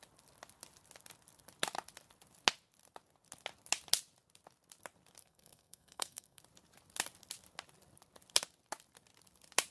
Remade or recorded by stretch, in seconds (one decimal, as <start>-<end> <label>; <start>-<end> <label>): 0.0-5.2 recorded; 5.2-6.4 remade; 6.4-9.7 recorded